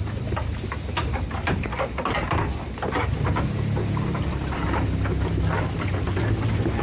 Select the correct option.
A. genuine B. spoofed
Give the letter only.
A